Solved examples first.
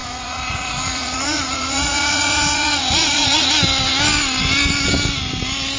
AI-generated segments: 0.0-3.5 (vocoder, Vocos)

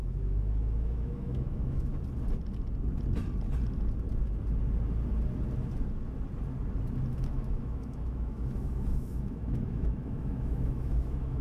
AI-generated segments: 0.0-1.9 (autoencoder, DAC-VAE); 7.1-11.4

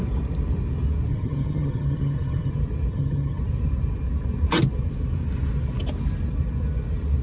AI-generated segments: 1.1-2.5 (vocoder, HiFi-GAN); 2.9-3.4

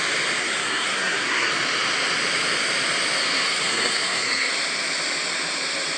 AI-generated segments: 0.4-1.5 (codec, SNAC); 3.2-4.5

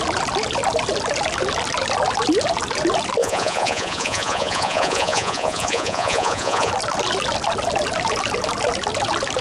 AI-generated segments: 3.2-6.7 (vocoder, Vocos)